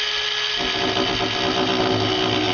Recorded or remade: recorded